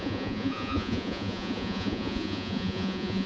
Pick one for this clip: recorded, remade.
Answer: remade